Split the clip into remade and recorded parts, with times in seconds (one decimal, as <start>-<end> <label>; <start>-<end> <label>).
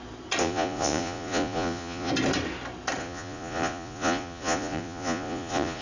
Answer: 0.0-0.4 recorded; 0.4-2.1 remade; 2.1-3.0 recorded; 3.0-5.8 remade